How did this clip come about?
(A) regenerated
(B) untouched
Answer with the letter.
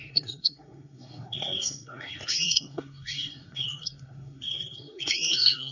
A